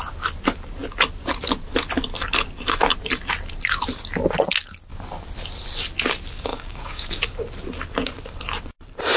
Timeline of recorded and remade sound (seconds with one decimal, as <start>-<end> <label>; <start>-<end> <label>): 0.0-6.5 recorded; 6.5-7.1 remade; 7.1-9.2 recorded